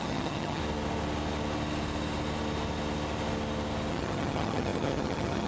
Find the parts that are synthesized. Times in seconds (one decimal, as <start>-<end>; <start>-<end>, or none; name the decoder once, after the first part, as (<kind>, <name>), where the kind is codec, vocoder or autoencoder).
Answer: 0.0-0.6 (vocoder, HiFi-GAN); 3.9-5.5